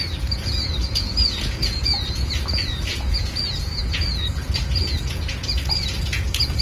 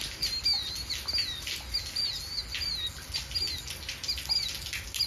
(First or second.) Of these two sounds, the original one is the second